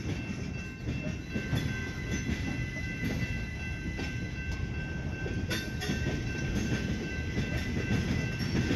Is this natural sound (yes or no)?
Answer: yes